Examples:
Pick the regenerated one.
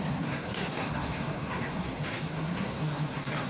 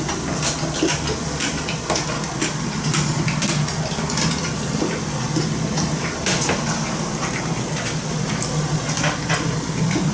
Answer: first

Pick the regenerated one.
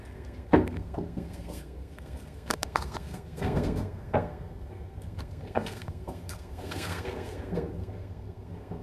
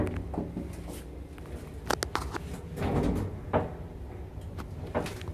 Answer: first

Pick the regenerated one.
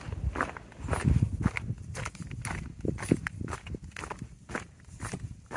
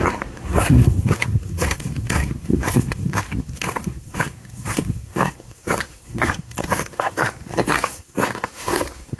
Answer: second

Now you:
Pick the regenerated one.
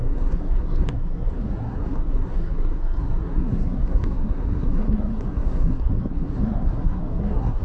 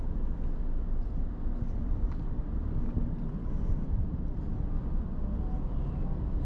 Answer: first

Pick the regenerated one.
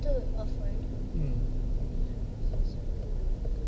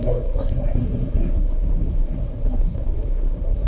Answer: second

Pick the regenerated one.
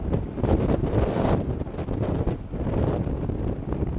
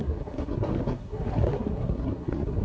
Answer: second